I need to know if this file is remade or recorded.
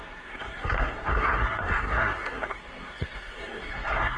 remade